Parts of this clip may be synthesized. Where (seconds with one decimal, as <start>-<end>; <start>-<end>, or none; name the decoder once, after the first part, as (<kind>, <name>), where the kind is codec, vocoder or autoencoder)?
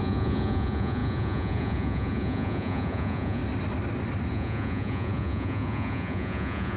0.0-3.4 (vocoder, Vocos); 4.3-6.8